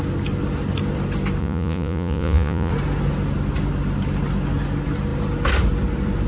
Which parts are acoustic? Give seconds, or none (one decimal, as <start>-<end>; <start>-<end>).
0.0-1.4; 2.7-6.3